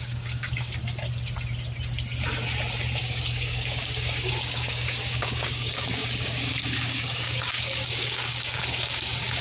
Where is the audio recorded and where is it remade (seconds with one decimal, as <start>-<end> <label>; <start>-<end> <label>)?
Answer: 0.0-0.8 remade; 0.8-3.0 recorded; 3.0-9.4 remade